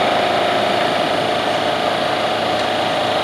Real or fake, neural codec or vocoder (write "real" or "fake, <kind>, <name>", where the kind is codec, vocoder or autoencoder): real